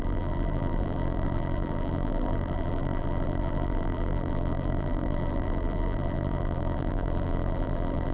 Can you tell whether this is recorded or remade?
remade